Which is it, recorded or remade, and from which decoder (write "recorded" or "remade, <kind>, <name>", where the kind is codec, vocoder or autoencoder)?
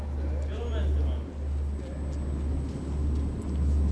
recorded